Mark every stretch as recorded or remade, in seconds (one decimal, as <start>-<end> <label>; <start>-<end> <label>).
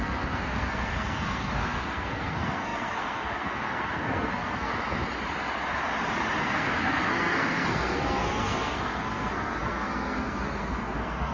0.0-4.7 remade; 4.7-6.4 recorded; 6.4-11.3 remade